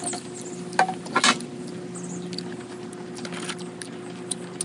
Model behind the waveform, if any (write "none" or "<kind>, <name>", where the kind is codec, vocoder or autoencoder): none